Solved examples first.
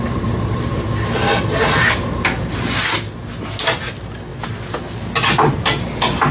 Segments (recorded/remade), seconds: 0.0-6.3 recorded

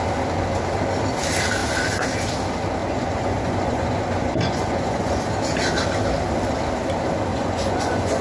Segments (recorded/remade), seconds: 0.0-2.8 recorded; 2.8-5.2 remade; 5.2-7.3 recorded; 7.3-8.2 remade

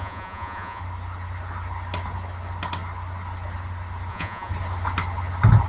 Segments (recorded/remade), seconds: 0.0-0.8 remade; 0.8-4.1 recorded; 4.1-4.5 remade; 4.5-5.7 recorded

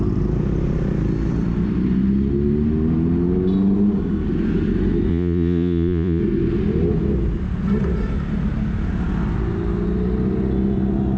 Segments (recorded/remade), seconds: 0.0-5.1 recorded; 5.1-6.2 remade; 6.2-11.2 recorded

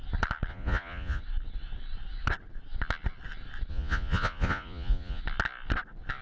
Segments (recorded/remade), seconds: 0.0-0.5 recorded; 0.5-1.2 remade; 1.2-3.7 recorded; 3.7-5.2 remade; 5.2-6.2 recorded